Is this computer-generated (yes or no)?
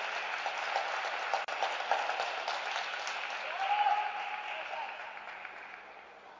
no